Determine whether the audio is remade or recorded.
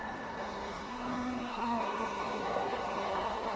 remade